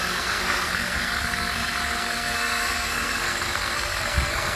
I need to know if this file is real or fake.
fake